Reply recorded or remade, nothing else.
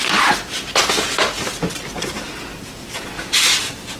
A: recorded